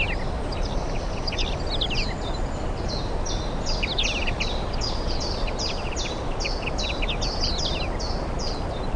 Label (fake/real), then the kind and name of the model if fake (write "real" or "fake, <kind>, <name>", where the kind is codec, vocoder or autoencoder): real